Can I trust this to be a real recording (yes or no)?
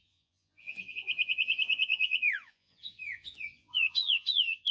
no